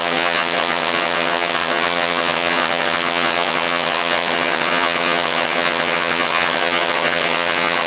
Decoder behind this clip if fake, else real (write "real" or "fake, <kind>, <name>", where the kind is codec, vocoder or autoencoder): fake, vocoder, HiFi-GAN